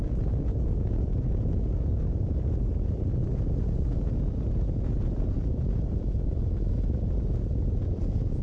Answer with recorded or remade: remade